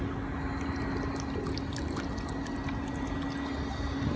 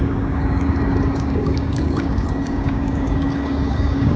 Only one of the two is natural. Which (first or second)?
first